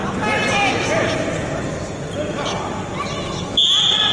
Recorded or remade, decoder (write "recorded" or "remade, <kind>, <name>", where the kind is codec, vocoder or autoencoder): recorded